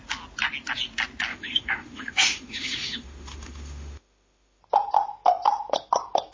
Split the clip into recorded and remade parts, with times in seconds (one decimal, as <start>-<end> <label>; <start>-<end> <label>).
0.0-1.3 recorded; 1.3-4.6 remade; 4.6-6.3 recorded